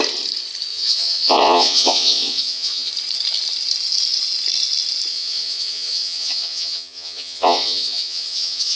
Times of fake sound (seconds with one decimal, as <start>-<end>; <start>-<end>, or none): 0.7-2.9; 5.1-8.8